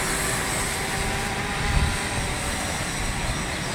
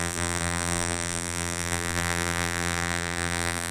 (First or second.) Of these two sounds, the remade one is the second